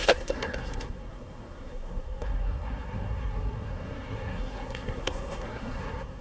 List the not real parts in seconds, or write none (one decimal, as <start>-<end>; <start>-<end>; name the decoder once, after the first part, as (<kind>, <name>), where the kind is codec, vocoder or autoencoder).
0.0-6.2 (codec, SNAC)